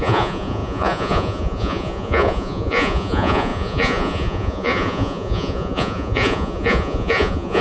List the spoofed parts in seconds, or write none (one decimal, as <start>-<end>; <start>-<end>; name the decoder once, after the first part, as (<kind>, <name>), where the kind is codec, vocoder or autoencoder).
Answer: 0.0-7.6 (vocoder, Vocos)